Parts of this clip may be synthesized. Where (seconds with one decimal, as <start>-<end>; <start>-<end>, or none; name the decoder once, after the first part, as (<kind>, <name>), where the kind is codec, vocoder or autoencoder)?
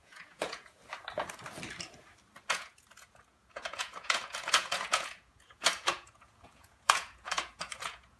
0.0-0.8 (vocoder, Vocos); 2.5-8.2